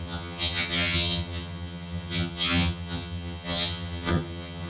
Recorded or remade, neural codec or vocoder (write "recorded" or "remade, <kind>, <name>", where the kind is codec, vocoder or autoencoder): remade, vocoder, HiFi-GAN